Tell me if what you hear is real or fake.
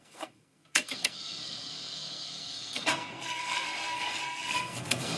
fake